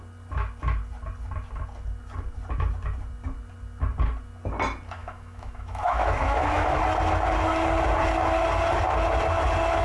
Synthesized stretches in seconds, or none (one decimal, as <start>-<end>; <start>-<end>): 5.0-6.8